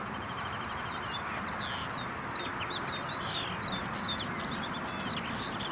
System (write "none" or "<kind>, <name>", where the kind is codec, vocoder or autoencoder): none